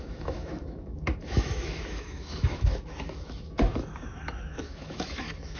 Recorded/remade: remade